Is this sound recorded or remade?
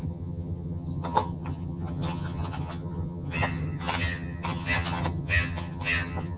remade